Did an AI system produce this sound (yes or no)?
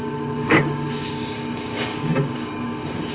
yes